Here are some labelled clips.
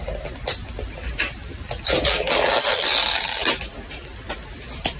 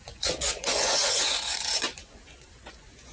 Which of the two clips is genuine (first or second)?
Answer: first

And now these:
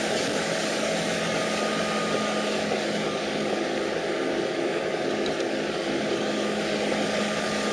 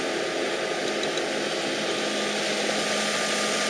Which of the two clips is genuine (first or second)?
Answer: second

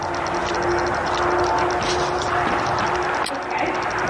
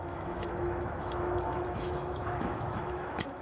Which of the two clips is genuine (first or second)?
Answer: first